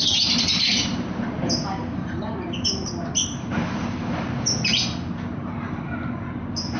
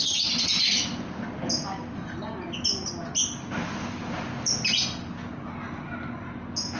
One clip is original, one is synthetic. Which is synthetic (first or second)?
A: first